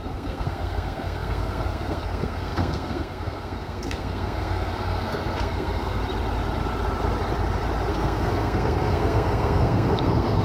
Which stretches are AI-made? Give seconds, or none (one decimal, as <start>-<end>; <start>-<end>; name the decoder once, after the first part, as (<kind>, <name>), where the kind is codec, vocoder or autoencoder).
0.0-6.0 (codec, SNAC); 7.9-10.4